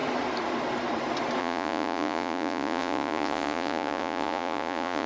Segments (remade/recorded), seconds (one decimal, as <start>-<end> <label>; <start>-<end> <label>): 0.0-1.4 recorded; 1.4-5.1 remade